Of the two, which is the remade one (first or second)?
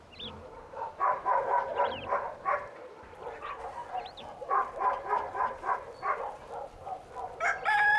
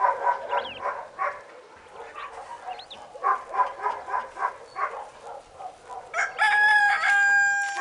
first